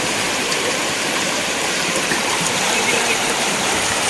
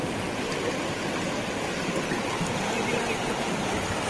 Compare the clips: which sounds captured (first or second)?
second